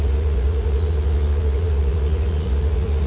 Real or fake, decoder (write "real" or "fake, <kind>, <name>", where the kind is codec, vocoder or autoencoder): fake, vocoder, Vocos